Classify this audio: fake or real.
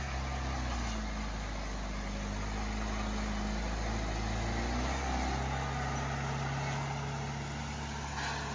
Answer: real